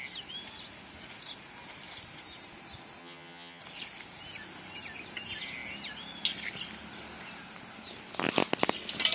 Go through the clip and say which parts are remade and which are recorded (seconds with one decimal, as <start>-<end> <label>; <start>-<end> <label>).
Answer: 0.0-3.0 recorded; 3.0-3.6 remade; 3.6-9.1 recorded